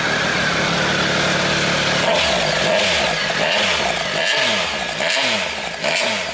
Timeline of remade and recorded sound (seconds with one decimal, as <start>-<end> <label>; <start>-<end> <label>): 0.0-6.3 recorded